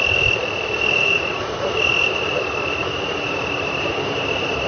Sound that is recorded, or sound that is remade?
recorded